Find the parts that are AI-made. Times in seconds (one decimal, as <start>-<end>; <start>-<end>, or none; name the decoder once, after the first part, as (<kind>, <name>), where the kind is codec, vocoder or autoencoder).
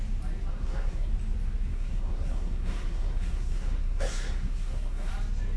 0.5-1.1 (codec, SNAC); 1.7-5.1